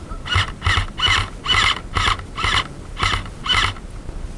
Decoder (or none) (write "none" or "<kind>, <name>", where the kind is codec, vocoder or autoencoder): none